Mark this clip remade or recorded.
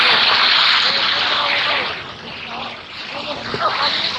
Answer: recorded